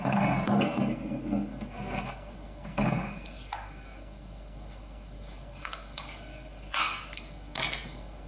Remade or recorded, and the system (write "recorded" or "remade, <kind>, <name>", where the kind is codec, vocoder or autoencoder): remade, codec, SNAC